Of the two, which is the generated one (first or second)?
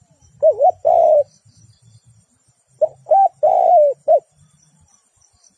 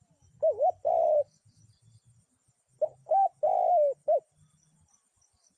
first